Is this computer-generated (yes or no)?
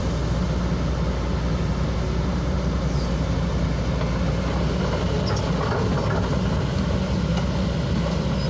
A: no